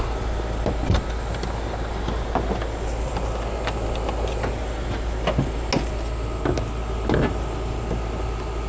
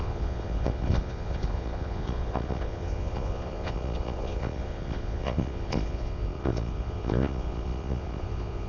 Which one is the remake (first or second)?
second